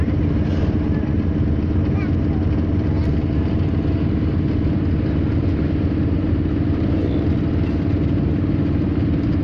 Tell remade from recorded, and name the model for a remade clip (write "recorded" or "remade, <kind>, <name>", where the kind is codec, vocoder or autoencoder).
recorded